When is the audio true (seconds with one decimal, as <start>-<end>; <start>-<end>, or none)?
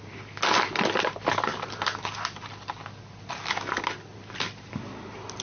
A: 0.0-5.4